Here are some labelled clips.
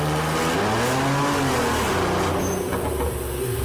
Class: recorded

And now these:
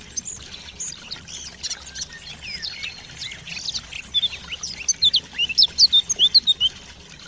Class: recorded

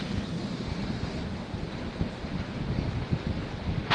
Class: recorded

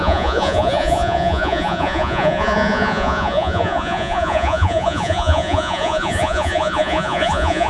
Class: remade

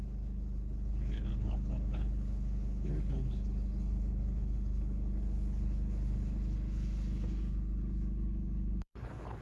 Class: remade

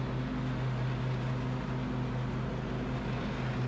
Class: recorded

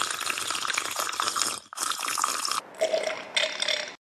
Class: recorded